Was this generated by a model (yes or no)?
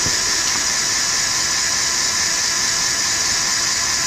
no